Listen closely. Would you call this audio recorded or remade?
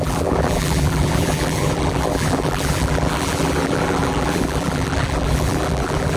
remade